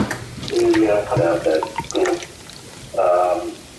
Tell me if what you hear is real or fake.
real